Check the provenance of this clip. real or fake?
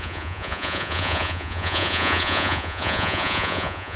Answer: fake